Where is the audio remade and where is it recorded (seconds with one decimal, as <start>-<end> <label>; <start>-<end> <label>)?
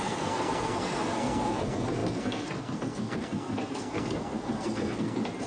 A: 0.0-5.5 remade